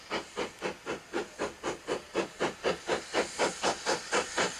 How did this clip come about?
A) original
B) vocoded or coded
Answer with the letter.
A